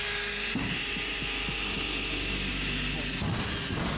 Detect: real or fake real